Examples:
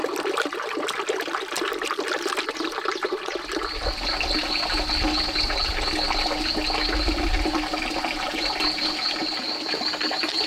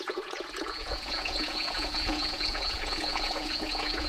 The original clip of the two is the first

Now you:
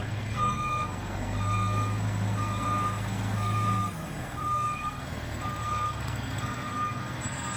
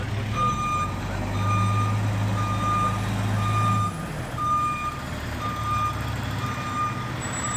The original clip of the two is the second